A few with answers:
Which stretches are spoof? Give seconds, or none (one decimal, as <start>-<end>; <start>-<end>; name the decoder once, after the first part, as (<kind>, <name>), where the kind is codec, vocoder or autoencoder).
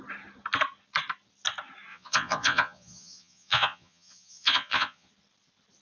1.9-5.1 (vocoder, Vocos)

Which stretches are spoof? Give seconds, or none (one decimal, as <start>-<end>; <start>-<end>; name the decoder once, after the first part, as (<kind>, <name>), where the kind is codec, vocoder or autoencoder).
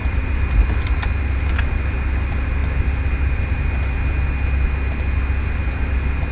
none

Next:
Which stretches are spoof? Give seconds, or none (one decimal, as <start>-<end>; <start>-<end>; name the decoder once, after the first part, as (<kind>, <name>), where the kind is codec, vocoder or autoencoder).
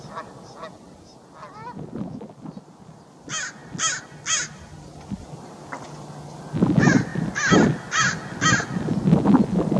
none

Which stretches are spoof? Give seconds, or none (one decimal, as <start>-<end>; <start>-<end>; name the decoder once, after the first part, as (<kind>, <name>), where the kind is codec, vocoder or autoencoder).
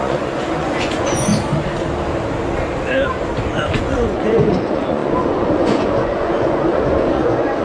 0.0-1.3 (vocoder, Vocos); 3.8-7.6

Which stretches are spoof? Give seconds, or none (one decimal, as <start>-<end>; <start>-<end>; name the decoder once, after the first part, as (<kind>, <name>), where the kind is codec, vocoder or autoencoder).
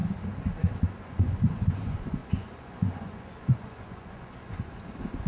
1.0-5.3 (vocoder, Vocos)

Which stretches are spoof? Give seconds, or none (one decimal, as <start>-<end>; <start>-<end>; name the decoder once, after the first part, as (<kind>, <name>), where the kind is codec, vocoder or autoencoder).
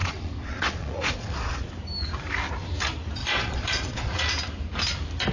0.0-1.7 (vocoder, Vocos); 3.2-4.2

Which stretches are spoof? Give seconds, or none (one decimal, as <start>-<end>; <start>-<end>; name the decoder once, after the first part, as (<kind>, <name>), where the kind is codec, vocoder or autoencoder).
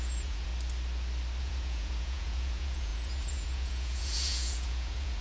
0.0-0.5 (vocoder, Vocos); 1.4-5.2